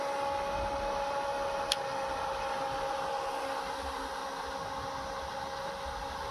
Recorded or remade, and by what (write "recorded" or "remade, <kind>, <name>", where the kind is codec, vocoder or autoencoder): recorded